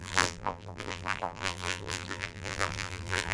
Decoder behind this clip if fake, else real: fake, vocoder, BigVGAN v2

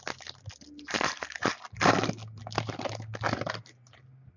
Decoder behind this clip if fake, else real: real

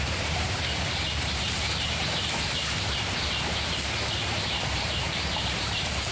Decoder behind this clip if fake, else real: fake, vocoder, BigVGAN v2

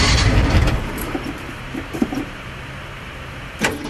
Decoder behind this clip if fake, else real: fake, vocoder, BigVGAN v2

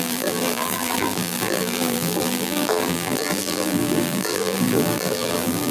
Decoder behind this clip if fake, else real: fake, vocoder, BigVGAN v2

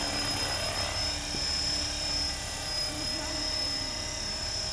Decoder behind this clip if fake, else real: real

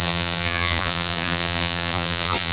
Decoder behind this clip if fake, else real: fake, vocoder, BigVGAN v2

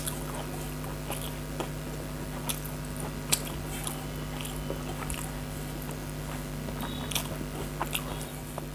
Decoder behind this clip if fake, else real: real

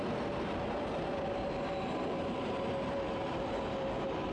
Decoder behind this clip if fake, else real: fake, vocoder, BigVGAN v2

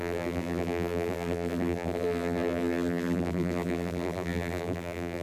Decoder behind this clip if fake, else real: fake, vocoder, BigVGAN v2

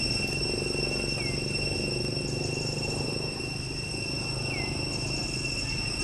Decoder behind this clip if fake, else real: real